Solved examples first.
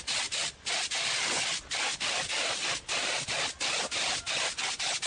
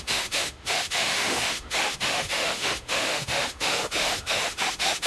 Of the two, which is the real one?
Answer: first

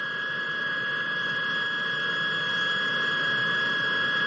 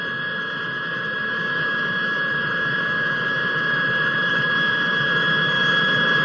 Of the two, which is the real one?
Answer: first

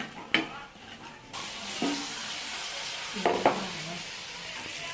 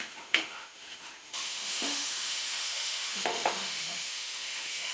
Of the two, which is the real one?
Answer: first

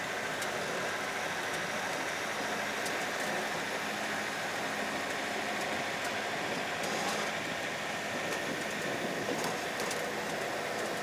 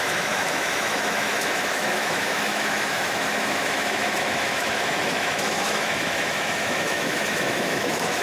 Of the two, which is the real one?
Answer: first